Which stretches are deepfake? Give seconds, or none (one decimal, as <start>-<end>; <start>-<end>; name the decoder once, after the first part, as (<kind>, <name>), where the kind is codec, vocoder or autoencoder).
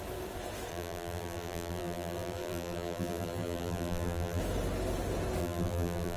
0.7-4.4 (vocoder, BigVGAN v2); 5.4-6.2